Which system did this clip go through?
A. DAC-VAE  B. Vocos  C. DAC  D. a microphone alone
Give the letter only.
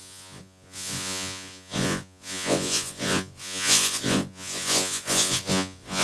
B